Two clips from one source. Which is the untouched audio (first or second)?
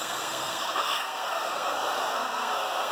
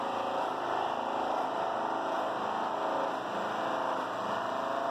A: second